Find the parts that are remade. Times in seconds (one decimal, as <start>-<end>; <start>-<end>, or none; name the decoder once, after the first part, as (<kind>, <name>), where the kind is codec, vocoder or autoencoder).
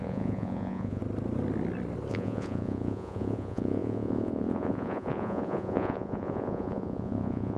0.0-1.0 (vocoder, Vocos); 2.1-7.6